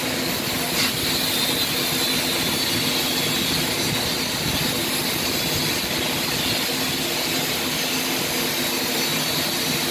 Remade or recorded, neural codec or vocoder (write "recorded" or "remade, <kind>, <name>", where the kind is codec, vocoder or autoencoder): recorded